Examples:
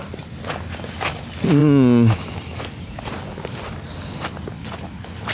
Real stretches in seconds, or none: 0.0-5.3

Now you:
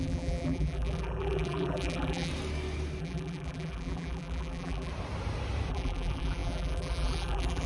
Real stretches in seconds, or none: 2.3-3.0; 4.9-5.7

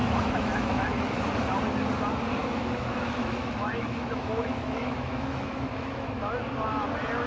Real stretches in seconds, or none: 1.2-2.4; 6.4-7.3

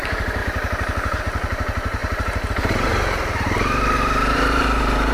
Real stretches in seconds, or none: 0.4-1.2; 2.9-3.5

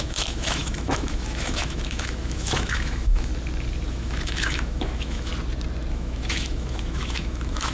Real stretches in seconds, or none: 3.3-3.9; 5.3-5.9

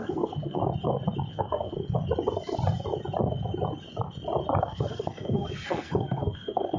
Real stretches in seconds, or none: 0.6-1.3; 1.8-4.6

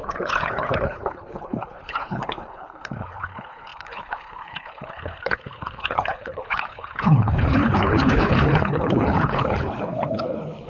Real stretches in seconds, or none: none

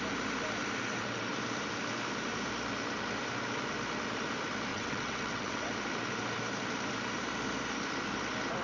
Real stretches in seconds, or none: 0.0-4.7; 5.7-8.6